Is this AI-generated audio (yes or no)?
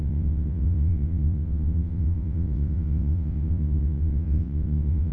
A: yes